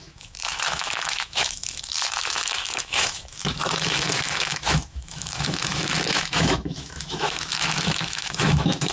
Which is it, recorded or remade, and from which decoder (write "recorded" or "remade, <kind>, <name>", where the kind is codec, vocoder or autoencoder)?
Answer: remade, autoencoder, DAC-VAE